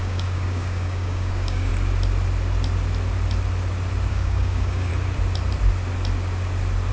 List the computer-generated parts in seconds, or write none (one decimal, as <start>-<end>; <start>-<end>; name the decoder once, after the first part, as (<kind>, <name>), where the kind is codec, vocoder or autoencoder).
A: 0.0-1.7 (codec, DAC); 4.1-4.9